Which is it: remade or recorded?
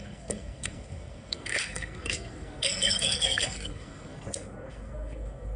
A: remade